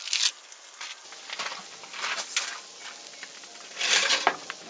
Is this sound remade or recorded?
recorded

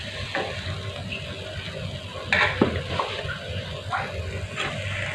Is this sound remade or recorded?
recorded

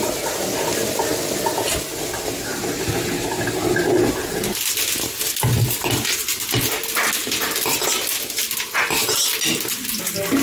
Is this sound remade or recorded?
recorded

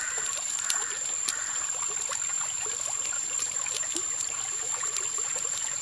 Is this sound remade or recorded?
remade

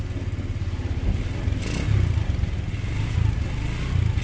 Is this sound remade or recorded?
recorded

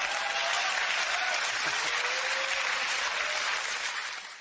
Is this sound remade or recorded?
recorded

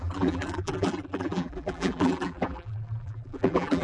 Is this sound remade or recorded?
remade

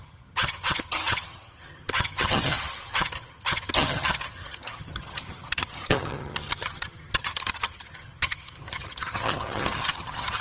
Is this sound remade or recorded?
remade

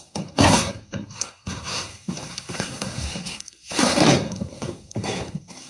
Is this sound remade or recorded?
remade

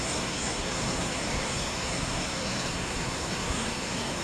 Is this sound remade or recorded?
remade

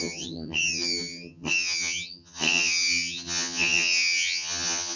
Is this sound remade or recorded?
remade